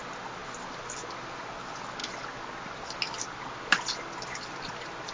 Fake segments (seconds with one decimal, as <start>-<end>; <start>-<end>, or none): 0.4-1.4